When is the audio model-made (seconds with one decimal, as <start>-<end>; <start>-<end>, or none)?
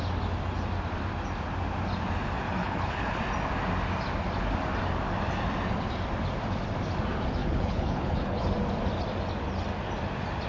2.6-3.2; 7.4-8.4